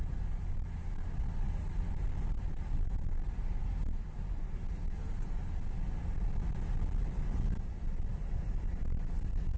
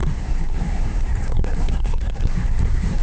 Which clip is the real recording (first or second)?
first